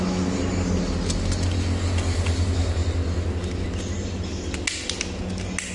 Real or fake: real